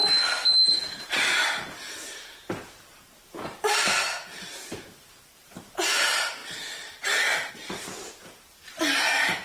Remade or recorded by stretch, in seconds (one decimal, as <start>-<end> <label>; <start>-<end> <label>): 0.0-0.9 recorded; 0.9-6.4 remade; 6.4-7.5 recorded; 7.5-9.4 remade